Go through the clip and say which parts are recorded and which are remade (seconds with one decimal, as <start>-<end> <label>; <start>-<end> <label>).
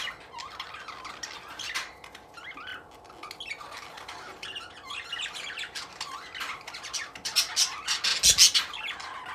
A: 0.0-9.3 recorded